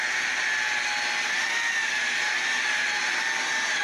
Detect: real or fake real